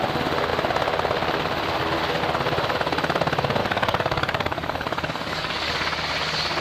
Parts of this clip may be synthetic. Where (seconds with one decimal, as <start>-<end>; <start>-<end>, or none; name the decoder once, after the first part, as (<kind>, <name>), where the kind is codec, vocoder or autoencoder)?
3.6-5.7 (codec, DAC)